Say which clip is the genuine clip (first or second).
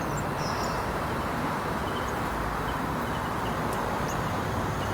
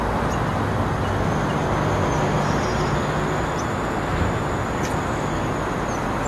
second